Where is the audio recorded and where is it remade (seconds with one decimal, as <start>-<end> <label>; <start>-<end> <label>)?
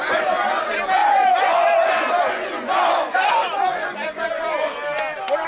0.0-1.0 recorded; 1.0-4.3 remade; 4.3-5.5 recorded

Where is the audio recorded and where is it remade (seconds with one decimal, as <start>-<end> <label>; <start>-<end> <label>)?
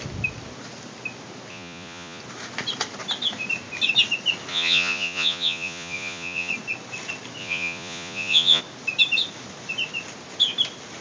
0.0-1.5 recorded; 1.5-2.2 remade; 2.2-4.5 recorded; 4.5-6.5 remade; 6.5-7.4 recorded; 7.4-8.6 remade; 8.6-11.0 recorded